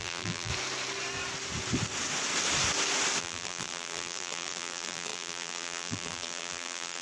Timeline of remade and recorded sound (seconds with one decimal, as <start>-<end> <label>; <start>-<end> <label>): 0.0-0.5 remade; 0.5-3.2 recorded; 3.2-7.0 remade